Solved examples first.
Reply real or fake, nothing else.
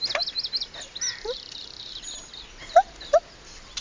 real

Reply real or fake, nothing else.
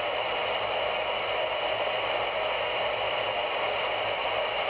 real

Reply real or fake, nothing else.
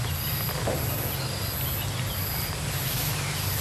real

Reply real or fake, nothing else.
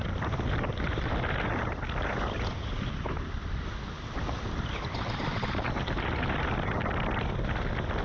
real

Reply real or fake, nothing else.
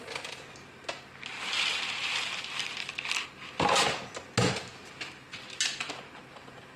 real